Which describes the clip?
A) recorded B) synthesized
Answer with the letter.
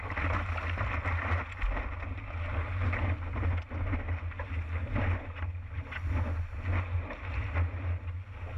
A